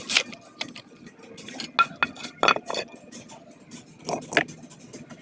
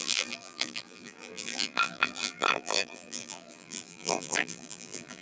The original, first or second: first